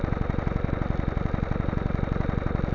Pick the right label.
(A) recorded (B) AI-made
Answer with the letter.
A